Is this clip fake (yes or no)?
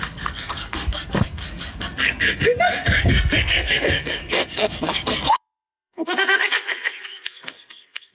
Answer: yes